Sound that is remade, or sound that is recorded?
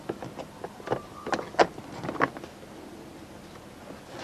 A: recorded